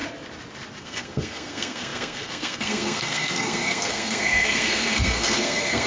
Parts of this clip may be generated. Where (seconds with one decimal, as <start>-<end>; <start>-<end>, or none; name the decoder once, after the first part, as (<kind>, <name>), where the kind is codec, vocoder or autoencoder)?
0.8-5.9 (codec, SNAC)

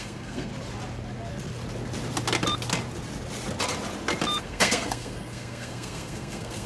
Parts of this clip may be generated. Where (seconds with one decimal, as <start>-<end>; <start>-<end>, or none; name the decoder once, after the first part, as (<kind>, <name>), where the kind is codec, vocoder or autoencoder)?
0.0-0.5 (codec, SNAC); 4.4-6.7

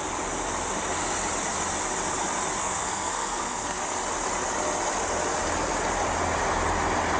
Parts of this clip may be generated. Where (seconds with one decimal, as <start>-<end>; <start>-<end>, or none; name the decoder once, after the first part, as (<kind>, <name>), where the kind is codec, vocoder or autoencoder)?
2.6-3.8 (codec, SNAC)

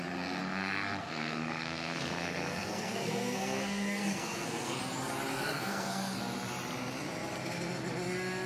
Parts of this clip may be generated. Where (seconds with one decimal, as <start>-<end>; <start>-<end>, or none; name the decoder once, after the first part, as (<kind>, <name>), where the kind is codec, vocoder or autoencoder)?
0.4-4.8 (codec, SNAC); 5.3-6.2

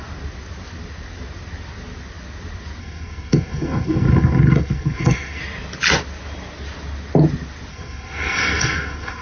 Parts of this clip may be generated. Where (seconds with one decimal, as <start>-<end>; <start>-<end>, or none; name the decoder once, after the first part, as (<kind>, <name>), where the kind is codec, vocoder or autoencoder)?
2.8-5.4 (codec, SNAC); 7.7-9.2

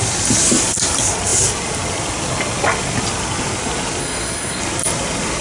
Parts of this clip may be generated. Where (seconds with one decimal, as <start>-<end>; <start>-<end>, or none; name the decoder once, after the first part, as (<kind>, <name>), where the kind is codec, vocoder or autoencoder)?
4.0-4.6 (codec, SNAC)

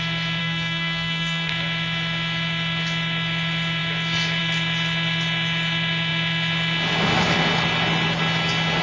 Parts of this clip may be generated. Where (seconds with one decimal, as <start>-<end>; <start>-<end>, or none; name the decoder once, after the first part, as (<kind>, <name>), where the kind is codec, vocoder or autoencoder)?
0.4-1.5 (codec, SNAC)

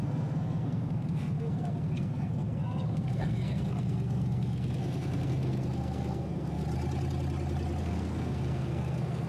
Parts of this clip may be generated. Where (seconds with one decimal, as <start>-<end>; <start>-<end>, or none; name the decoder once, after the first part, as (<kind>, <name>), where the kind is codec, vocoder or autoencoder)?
0.0-6.6 (codec, SNAC); 7.8-9.3